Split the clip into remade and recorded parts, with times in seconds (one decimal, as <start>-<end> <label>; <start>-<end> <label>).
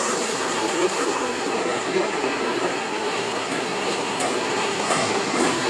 0.0-5.7 remade